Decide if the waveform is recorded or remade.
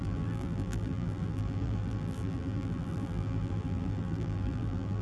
remade